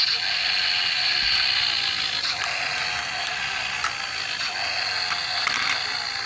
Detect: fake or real real